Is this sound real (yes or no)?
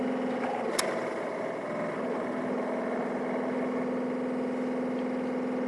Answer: yes